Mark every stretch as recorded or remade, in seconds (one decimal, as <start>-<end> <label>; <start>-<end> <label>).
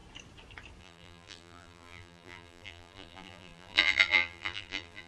0.0-0.8 recorded; 0.8-5.1 remade